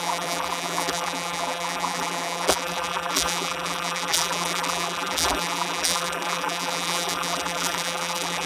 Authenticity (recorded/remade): remade